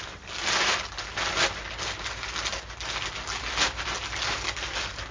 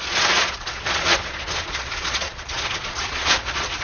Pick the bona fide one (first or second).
first